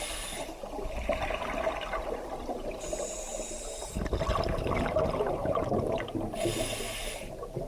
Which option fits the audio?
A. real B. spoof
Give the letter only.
A